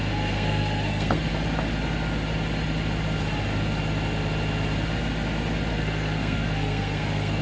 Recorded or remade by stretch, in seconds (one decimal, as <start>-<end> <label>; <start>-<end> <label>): 0.0-1.3 remade; 1.3-5.7 recorded; 5.7-7.4 remade